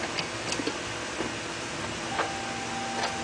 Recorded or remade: recorded